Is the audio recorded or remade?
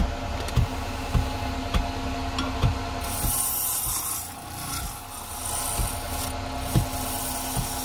recorded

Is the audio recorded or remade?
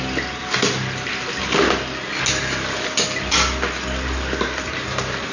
recorded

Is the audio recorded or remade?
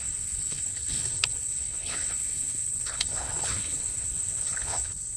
remade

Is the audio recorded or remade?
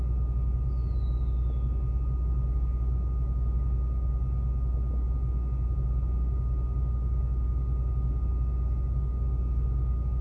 recorded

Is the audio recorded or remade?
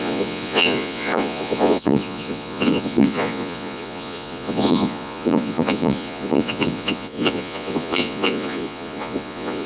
remade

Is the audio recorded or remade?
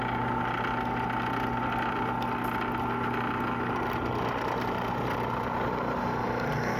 recorded